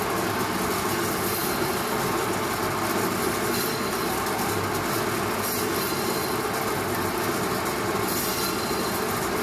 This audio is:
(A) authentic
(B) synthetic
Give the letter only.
A